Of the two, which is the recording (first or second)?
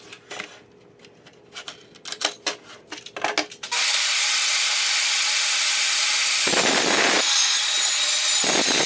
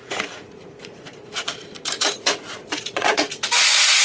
first